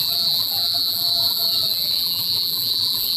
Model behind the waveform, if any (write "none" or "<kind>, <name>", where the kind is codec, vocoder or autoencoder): vocoder, BigVGAN v2